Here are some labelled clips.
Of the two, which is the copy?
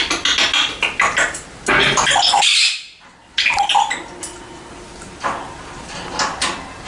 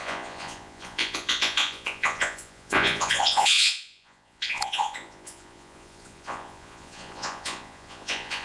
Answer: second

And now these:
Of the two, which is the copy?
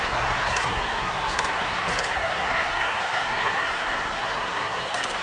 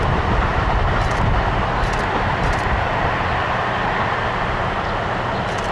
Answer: first